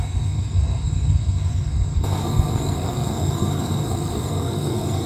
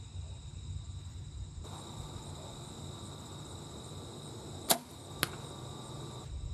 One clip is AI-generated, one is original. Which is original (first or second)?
second